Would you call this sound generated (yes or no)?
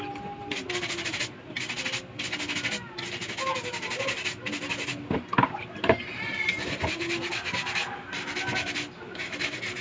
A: no